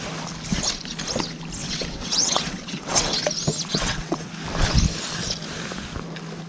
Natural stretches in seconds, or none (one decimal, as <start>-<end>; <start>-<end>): 0.0-1.6; 3.2-3.7; 4.3-6.5